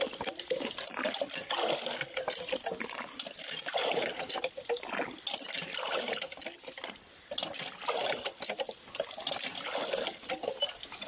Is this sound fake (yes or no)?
no